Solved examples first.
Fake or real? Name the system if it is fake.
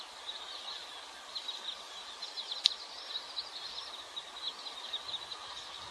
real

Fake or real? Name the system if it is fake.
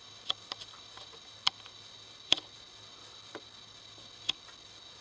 real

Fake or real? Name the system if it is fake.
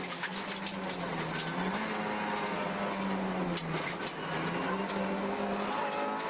real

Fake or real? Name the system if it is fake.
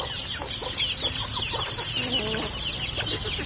real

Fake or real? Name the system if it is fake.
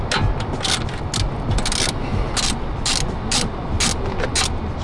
real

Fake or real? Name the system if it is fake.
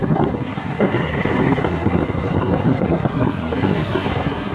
fake, codec, SNAC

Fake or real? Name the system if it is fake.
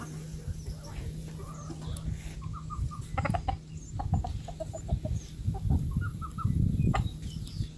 real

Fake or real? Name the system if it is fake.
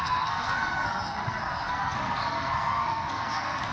fake, codec, SNAC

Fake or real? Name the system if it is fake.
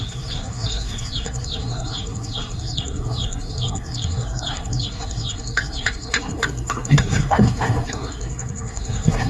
fake, codec, SNAC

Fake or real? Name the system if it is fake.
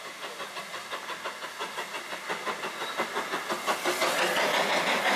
real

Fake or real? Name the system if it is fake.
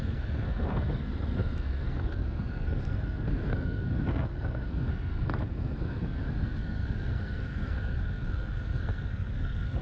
fake, codec, SNAC